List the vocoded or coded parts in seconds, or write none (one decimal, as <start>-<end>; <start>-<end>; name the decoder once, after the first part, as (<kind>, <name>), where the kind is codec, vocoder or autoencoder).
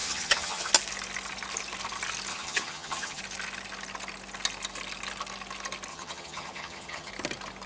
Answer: 0.0-0.7 (vocoder, HiFi-GAN); 2.3-3.2; 5.9-7.1